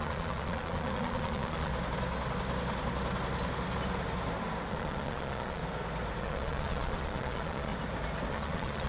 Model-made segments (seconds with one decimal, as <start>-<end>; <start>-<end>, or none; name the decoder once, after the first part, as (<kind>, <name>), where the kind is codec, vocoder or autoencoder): 0.0-1.7 (vocoder, Vocos); 4.7-5.6; 6.2-7.7; 8.3-8.9